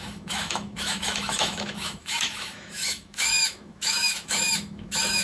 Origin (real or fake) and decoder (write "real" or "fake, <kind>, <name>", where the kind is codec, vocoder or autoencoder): fake, autoencoder, DAC-VAE